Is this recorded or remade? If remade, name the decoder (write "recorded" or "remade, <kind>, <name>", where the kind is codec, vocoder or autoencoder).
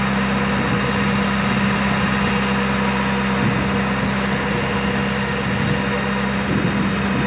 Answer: recorded